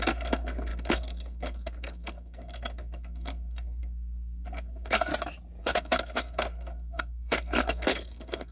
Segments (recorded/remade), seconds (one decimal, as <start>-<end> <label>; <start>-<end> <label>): 0.0-5.1 remade; 5.1-5.6 recorded; 5.6-8.5 remade